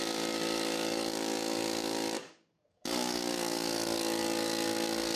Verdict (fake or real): fake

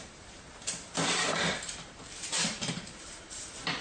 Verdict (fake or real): fake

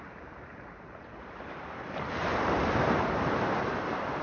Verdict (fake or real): fake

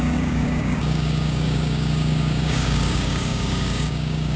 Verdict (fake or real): fake